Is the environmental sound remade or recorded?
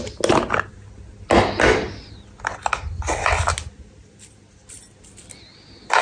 recorded